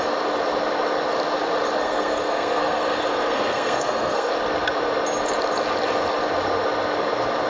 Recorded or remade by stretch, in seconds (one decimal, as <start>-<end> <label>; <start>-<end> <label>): 0.0-1.8 recorded; 1.8-4.3 remade; 4.3-7.5 recorded